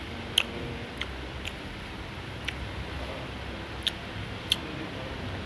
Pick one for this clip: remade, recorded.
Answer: recorded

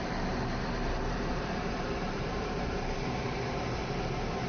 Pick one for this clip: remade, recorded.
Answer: remade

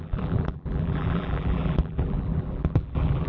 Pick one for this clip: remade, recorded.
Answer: remade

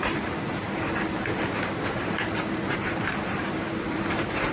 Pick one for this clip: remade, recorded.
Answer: remade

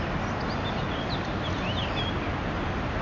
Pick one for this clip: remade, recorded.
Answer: recorded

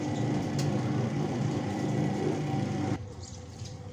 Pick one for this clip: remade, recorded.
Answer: remade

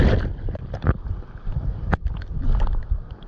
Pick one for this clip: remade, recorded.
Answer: remade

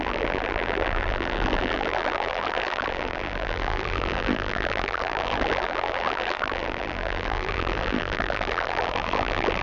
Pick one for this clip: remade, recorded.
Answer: remade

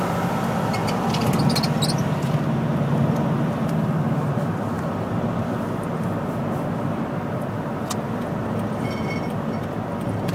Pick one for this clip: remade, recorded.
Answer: recorded